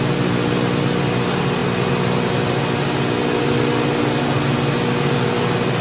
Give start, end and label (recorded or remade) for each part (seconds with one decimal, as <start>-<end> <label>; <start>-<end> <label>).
0.0-5.8 recorded